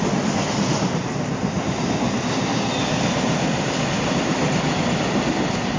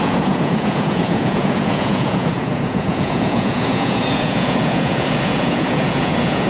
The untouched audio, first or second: first